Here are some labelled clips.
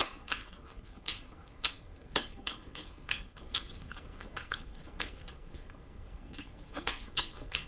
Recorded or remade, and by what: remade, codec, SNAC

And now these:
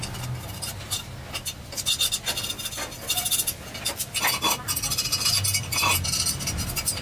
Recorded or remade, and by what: recorded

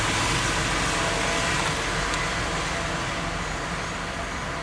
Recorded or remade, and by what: recorded